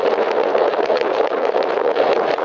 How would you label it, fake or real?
fake